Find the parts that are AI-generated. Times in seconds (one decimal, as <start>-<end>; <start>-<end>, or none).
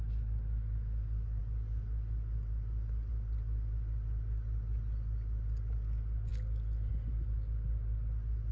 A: none